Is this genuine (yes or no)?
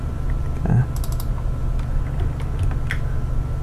yes